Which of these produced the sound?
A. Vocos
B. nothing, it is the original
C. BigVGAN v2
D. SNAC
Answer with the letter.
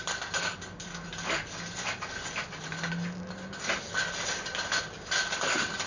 B